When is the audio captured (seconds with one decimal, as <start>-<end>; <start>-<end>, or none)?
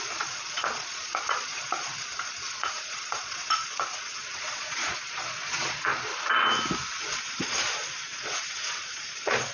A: 6.1-6.9